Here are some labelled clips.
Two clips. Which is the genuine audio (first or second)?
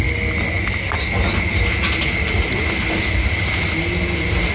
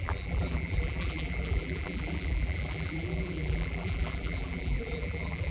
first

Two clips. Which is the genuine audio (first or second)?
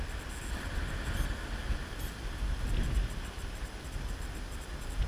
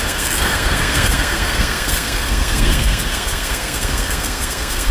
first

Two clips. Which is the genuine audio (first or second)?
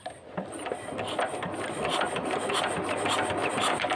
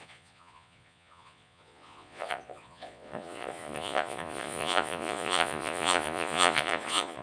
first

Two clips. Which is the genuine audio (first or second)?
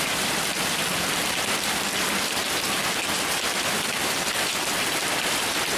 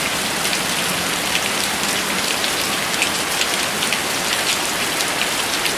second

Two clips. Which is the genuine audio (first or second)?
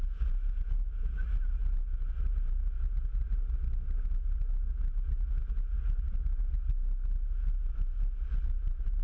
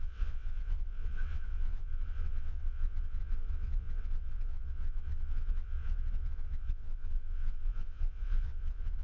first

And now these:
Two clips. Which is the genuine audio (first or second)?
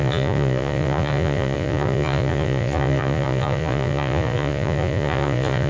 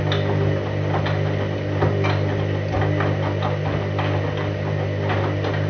second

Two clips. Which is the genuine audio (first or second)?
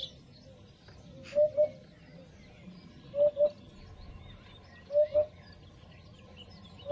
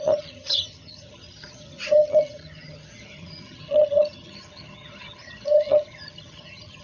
first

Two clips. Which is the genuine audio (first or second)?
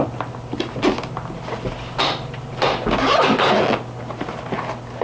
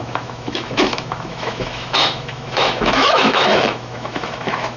first